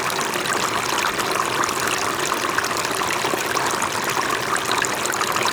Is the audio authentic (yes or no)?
yes